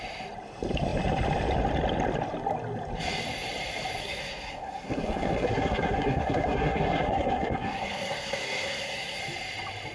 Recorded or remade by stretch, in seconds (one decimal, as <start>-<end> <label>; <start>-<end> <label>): 0.0-4.0 recorded; 4.0-9.2 remade; 9.2-9.9 recorded